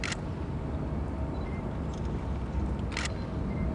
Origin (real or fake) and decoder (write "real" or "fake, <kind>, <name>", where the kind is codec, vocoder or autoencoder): real